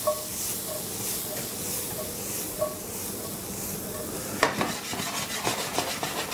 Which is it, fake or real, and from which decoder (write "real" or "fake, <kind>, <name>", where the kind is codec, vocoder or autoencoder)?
real